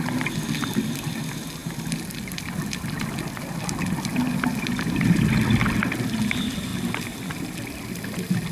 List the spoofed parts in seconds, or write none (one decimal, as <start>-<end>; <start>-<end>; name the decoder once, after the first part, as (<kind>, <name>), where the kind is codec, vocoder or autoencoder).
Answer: none